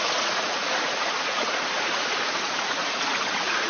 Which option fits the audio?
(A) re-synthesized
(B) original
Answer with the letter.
A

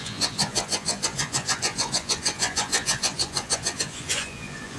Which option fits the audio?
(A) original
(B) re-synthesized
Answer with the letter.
B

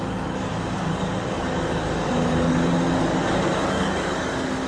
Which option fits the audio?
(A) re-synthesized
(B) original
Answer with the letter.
A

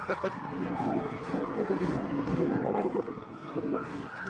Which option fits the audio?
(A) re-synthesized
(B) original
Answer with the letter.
A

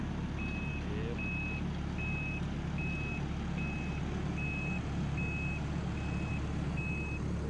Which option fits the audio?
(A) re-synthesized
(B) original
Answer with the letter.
B